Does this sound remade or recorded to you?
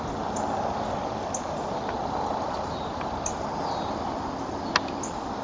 recorded